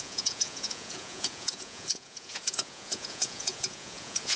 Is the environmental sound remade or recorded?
remade